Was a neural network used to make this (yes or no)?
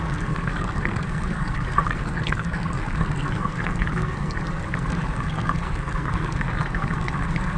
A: yes